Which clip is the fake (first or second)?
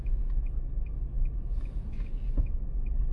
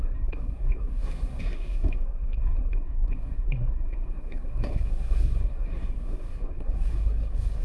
second